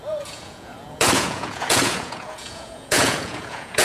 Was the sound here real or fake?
fake